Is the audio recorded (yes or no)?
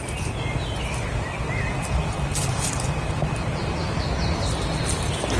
yes